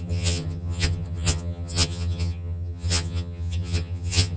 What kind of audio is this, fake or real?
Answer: fake